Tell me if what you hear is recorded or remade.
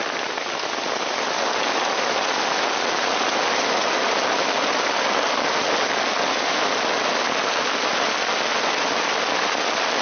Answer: recorded